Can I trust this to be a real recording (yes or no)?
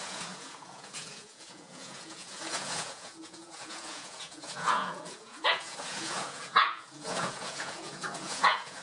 no